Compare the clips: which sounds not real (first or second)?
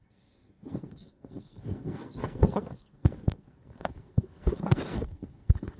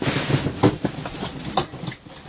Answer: first